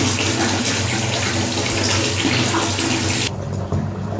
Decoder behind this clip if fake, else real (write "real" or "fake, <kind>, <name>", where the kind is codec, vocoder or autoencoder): real